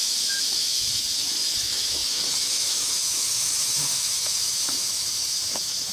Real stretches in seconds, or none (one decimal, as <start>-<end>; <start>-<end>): none